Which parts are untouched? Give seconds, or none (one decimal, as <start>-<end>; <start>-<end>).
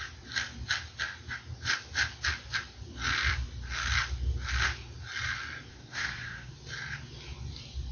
0.0-5.7; 6.5-7.9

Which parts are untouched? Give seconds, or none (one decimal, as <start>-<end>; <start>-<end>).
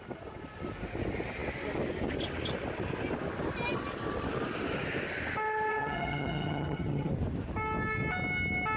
0.0-5.7; 7.1-8.8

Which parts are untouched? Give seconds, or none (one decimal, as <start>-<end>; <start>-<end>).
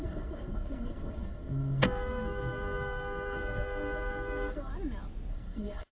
4.7-5.3